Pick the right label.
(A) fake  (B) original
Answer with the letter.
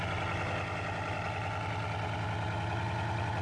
B